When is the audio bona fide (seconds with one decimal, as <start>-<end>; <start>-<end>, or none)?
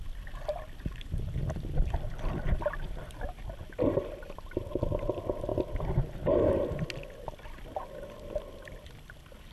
0.0-0.9; 1.4-9.5